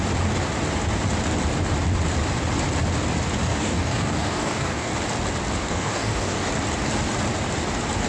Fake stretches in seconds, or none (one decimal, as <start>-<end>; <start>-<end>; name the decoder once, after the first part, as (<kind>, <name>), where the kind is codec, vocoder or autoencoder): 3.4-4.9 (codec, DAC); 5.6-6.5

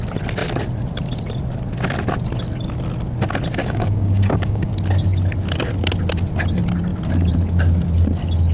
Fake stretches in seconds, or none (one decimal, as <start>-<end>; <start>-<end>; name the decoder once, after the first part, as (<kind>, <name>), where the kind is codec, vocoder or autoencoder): 3.6-4.7 (codec, DAC)

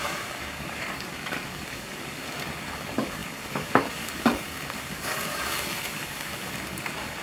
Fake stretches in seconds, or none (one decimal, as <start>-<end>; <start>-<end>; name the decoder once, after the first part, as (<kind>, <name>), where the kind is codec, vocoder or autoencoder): 0.0-7.2 (codec, DAC)

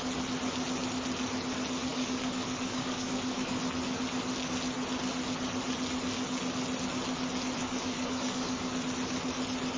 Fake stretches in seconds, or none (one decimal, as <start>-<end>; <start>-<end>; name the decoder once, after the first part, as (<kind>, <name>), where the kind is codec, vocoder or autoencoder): 1.9-3.6 (codec, DAC); 7.6-8.7

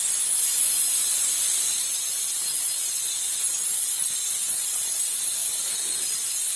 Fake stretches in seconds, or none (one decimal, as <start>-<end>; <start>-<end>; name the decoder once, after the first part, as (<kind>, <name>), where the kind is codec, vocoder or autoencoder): none

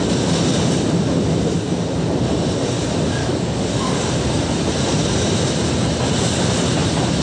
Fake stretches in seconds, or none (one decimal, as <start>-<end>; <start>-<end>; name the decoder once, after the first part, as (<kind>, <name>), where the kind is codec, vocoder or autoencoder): 3.2-4.1 (codec, DAC)

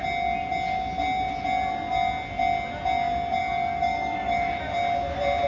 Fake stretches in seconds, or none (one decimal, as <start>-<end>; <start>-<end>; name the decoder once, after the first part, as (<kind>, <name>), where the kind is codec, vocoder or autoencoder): 3.4-4.6 (codec, DAC)

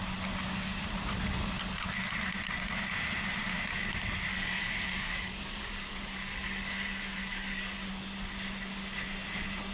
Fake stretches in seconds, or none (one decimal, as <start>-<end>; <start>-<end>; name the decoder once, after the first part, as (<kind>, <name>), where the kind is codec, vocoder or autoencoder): 4.3-7.9 (codec, DAC)